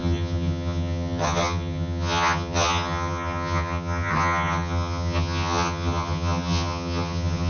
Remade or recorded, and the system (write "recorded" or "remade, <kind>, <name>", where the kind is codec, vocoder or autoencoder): remade, vocoder, HiFi-GAN